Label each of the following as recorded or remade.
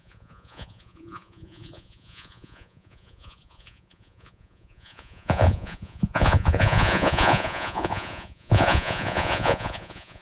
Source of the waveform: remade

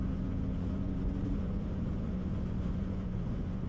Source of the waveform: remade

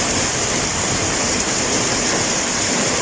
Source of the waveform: recorded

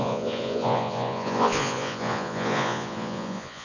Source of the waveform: remade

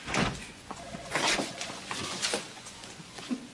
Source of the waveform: remade